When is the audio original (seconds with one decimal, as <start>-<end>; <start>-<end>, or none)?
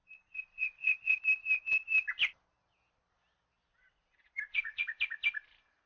1.2-3.7; 4.8-5.9